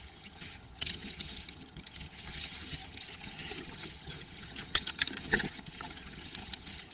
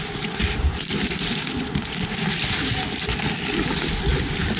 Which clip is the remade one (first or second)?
first